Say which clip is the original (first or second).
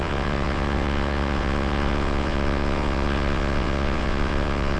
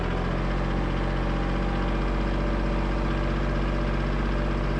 second